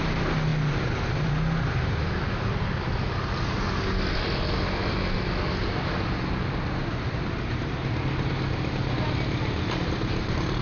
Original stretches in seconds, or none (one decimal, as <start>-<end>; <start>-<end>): 0.0-10.6